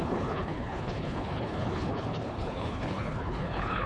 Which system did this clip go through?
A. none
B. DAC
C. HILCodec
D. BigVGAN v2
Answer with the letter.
C